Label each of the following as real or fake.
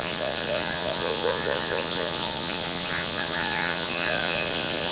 fake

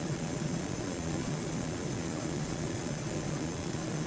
fake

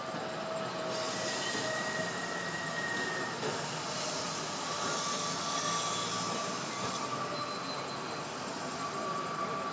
real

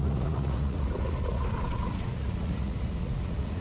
fake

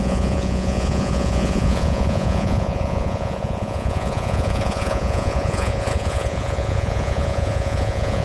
fake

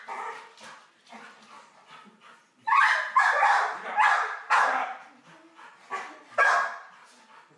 real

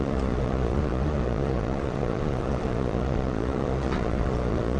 fake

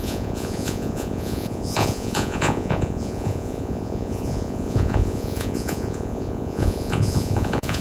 fake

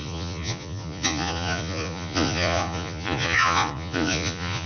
fake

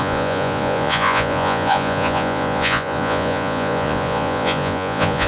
fake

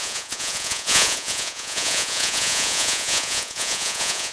fake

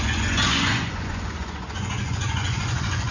fake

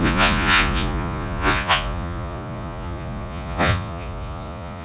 fake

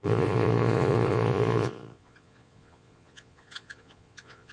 fake